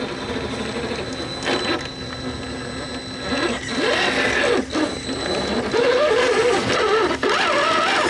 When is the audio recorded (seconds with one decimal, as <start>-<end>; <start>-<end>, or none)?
0.0-8.1